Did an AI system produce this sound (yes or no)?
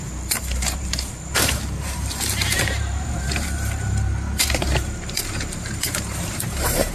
yes